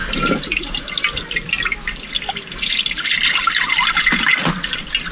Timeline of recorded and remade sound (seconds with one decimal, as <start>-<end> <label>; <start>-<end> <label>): 0.0-5.1 recorded